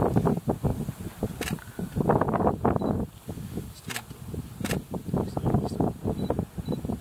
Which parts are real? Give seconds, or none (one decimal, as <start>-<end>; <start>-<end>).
0.0-7.0